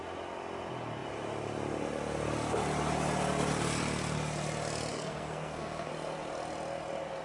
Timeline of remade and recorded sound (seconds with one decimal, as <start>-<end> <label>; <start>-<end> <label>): 0.0-4.9 recorded; 4.9-5.9 remade; 5.9-7.2 recorded